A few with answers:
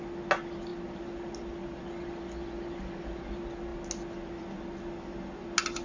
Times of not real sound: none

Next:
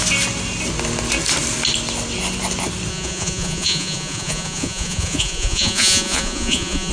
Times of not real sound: 2.9-6.9 (vocoder, Vocos)

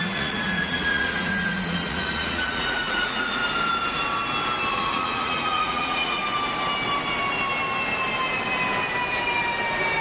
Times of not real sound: 0.0-3.4 (vocoder, Vocos); 4.7-6.2

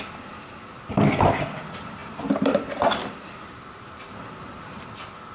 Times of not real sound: none